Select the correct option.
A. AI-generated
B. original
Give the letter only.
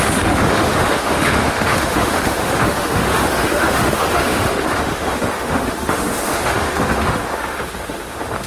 A